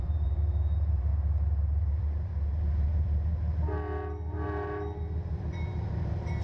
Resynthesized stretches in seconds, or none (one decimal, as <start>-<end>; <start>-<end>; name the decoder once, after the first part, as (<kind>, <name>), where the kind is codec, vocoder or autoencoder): 0.0-1.1 (vocoder, BigVGAN v2); 1.7-3.3; 4.3-6.4